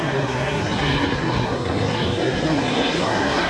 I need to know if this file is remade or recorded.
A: remade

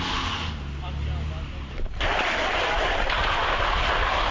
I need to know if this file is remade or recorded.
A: recorded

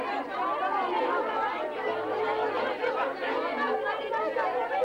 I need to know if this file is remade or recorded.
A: recorded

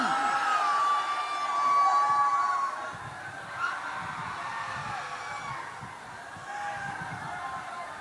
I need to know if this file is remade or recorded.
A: recorded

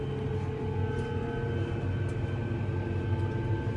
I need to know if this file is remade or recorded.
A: recorded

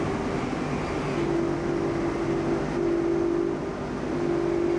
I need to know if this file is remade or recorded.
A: recorded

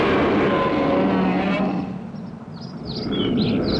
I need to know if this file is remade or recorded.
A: recorded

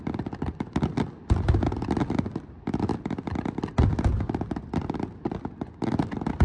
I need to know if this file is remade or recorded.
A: recorded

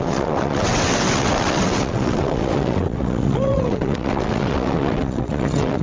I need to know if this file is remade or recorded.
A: remade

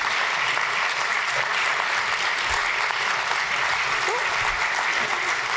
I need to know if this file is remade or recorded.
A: recorded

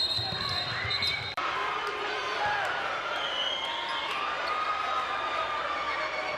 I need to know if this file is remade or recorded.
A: remade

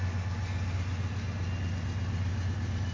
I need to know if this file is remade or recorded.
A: recorded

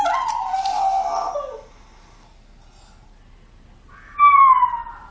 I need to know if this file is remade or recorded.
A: recorded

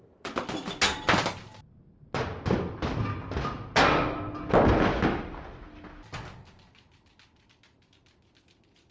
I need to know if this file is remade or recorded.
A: recorded